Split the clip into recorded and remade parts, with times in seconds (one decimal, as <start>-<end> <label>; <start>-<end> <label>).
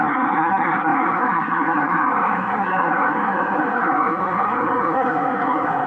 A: 0.0-5.9 remade